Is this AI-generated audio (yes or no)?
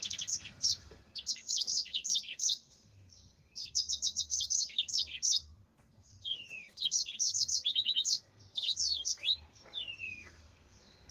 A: yes